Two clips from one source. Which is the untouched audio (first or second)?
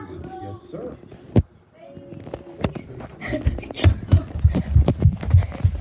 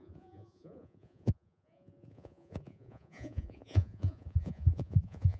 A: first